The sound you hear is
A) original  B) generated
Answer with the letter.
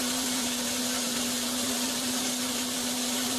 B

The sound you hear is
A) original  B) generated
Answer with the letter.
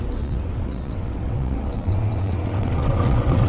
B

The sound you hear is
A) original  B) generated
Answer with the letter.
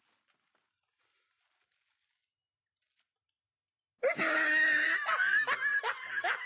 A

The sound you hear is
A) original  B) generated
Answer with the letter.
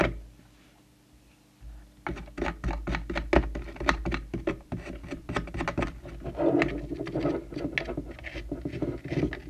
A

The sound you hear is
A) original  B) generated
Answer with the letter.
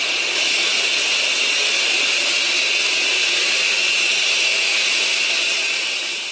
A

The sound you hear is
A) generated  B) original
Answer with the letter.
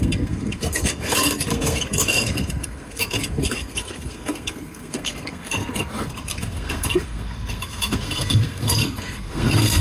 A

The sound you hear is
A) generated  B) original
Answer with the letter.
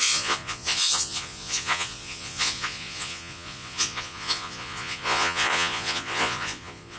A